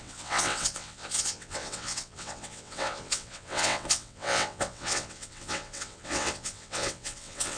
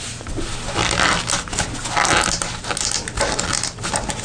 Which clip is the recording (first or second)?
second